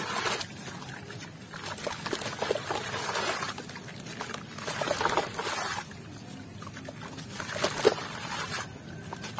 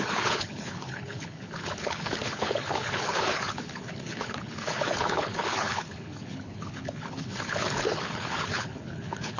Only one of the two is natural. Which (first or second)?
first